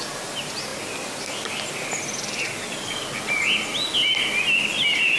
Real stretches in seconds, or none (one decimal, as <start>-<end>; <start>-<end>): 0.0-5.2